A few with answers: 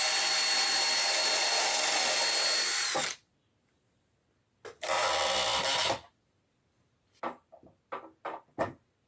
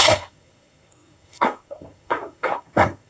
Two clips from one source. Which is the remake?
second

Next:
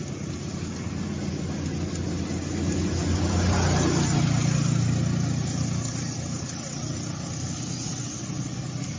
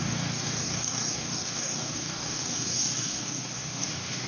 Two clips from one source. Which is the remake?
second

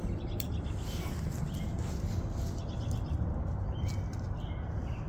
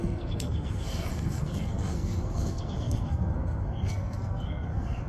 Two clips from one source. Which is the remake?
second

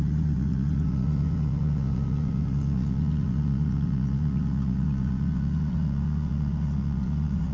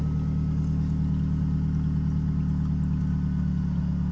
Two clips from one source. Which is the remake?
first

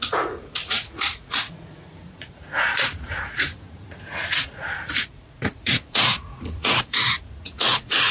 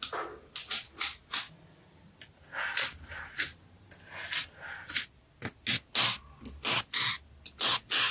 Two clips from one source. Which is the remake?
first